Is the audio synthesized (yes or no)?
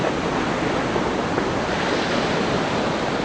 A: no